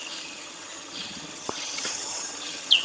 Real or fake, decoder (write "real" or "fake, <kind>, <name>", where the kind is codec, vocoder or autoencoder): fake, vocoder, HiFi-GAN